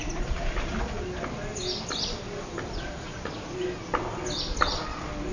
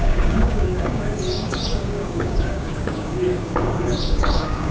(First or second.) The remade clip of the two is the second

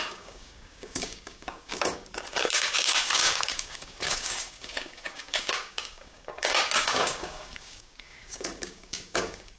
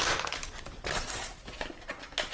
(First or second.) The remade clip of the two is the first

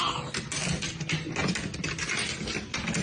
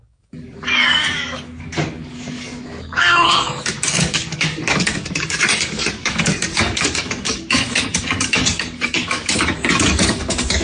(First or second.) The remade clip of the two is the second